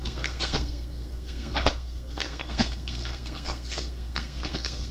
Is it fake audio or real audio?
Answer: fake